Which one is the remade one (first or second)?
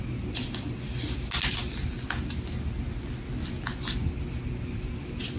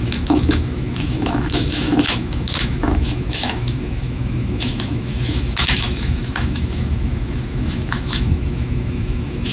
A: second